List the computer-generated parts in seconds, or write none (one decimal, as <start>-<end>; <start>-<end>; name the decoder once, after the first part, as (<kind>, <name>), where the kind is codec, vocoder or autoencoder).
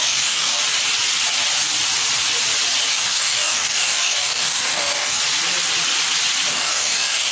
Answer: 0.0-0.6 (codec, DAC); 2.9-5.2; 6.5-7.3